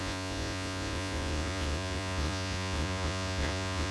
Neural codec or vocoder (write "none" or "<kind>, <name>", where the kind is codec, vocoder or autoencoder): vocoder, Vocos